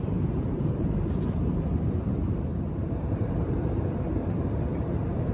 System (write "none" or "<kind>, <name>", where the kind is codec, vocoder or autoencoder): vocoder, BigVGAN v2